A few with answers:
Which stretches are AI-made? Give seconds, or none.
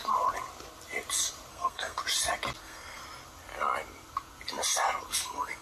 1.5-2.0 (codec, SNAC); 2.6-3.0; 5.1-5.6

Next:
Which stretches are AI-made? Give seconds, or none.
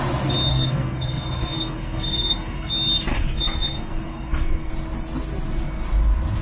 0.5-2.7 (codec, SNAC); 3.1-4.7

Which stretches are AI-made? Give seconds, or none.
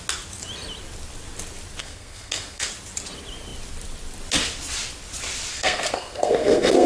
1.8-2.7 (codec, SNAC); 5.5-6.9